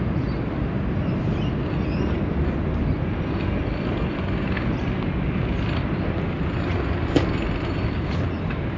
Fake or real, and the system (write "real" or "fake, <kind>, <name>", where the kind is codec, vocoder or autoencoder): real